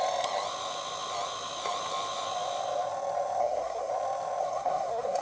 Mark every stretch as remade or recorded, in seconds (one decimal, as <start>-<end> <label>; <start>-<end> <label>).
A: 0.0-3.4 recorded; 3.4-3.9 remade; 3.9-4.4 recorded; 4.4-5.2 remade